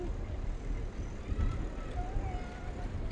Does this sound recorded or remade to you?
remade